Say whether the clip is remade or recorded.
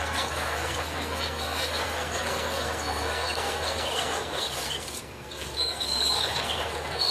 remade